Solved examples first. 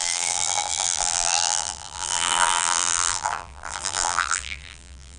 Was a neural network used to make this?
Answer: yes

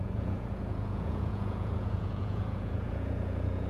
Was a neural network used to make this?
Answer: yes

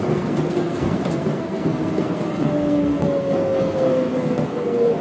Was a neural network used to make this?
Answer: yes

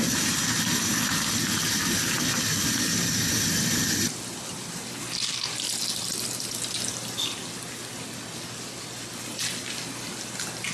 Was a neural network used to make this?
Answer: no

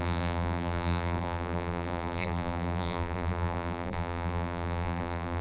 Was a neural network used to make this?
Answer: yes